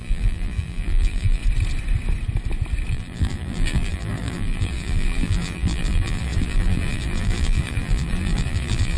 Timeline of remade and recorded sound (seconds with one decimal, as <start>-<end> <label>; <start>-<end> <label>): 0.0-1.4 remade; 1.4-2.9 recorded; 2.9-9.0 remade